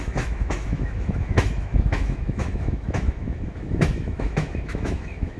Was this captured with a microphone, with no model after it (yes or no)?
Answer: no